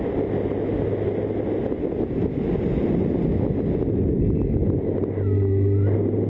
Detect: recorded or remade recorded